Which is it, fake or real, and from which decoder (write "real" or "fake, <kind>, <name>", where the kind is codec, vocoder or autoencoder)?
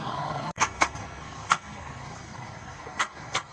fake, codec, SNAC